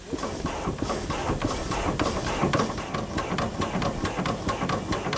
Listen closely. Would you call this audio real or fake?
real